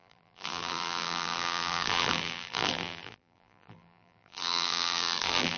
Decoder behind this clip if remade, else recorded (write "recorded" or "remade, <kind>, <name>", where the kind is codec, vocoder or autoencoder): remade, vocoder, BigVGAN v2